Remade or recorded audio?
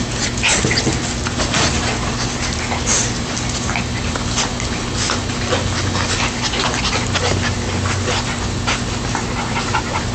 recorded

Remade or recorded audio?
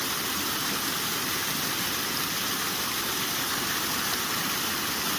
recorded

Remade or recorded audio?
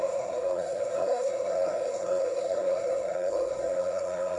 remade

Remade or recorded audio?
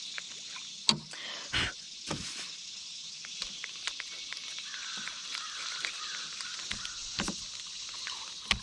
recorded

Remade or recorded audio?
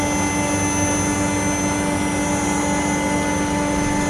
recorded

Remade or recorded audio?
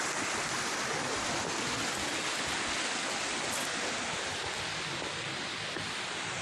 recorded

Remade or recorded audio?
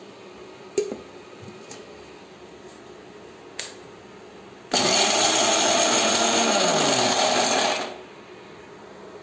recorded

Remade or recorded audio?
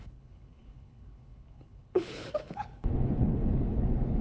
remade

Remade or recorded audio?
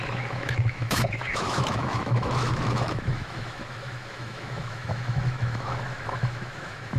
remade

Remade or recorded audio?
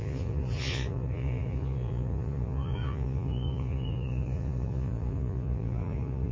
remade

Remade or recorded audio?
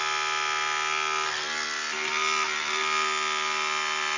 recorded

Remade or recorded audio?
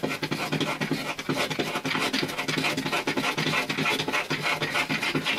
recorded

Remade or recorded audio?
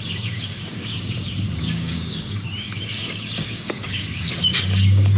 remade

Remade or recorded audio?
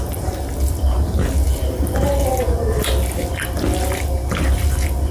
remade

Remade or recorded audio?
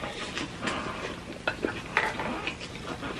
recorded